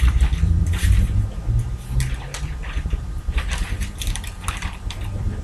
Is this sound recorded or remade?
remade